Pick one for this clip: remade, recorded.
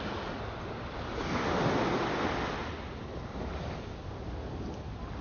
recorded